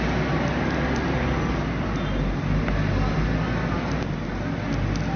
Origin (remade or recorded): recorded